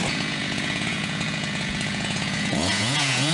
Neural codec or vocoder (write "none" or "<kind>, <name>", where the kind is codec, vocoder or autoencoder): vocoder, Vocos